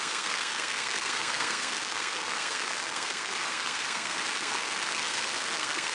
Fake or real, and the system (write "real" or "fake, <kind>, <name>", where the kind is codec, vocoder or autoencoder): fake, codec, SNAC